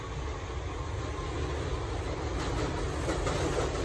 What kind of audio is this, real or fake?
real